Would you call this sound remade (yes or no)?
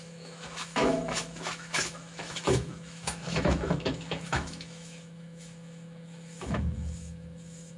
yes